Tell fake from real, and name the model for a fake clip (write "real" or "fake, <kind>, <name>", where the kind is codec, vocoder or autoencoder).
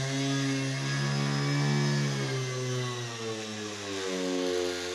real